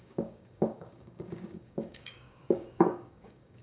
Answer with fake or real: fake